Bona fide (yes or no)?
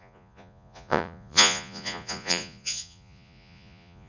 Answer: no